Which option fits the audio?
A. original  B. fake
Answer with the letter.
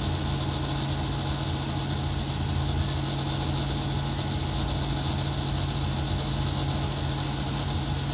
A